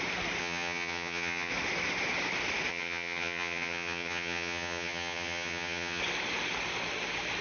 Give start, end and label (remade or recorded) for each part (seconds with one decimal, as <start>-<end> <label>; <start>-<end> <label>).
0.0-0.4 recorded; 0.4-1.5 remade; 1.5-2.7 recorded; 2.7-6.0 remade; 6.0-7.4 recorded

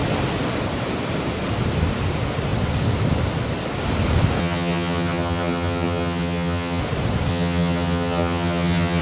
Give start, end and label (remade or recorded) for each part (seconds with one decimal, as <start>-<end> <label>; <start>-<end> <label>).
0.0-4.4 recorded; 4.4-6.8 remade; 6.8-7.3 recorded; 7.3-9.0 remade

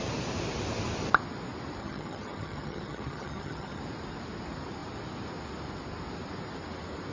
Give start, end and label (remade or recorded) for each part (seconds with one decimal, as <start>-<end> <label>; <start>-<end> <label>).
0.0-1.8 recorded; 1.8-3.8 remade; 3.8-7.1 recorded

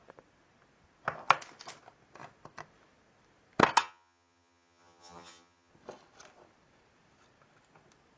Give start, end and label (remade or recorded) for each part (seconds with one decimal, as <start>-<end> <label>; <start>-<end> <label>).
0.0-3.8 recorded; 3.8-5.7 remade; 5.7-8.2 recorded

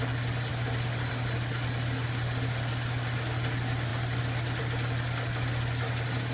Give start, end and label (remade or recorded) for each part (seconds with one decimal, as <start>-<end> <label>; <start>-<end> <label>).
0.0-6.3 recorded